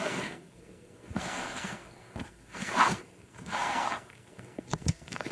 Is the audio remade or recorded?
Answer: remade